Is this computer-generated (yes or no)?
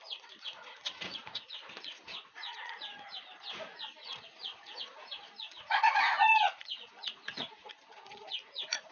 yes